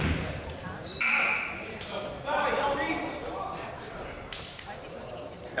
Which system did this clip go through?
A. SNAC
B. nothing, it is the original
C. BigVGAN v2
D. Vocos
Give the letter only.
C